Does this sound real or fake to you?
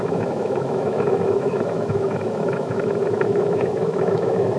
fake